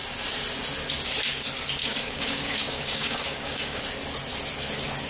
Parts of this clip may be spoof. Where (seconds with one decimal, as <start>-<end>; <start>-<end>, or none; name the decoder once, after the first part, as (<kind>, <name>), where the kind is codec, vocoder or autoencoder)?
1.8-3.8 (codec, DAC)